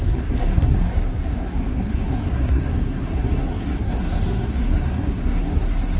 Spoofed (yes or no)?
yes